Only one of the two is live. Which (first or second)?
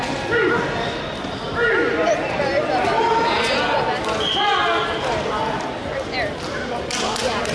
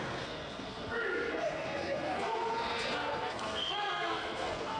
first